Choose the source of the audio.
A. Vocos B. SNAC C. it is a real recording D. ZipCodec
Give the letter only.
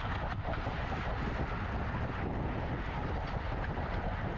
C